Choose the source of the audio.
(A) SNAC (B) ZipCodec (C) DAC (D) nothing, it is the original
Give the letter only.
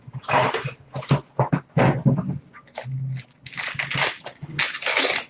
D